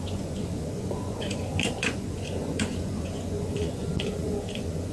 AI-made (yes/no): yes